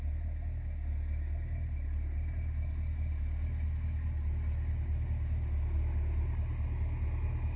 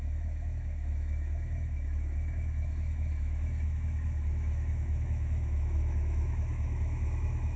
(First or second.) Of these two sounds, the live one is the first